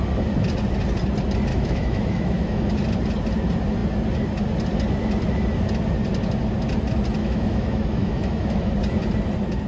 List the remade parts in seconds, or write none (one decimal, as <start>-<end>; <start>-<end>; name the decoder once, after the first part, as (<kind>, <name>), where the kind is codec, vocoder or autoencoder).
1.5-2.7 (autoencoder, DAC-VAE); 7.2-8.7